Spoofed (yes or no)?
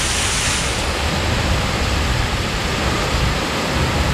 no